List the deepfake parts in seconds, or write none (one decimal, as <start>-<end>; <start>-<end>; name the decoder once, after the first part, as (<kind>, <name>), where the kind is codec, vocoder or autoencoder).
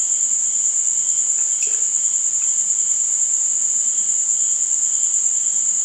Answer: none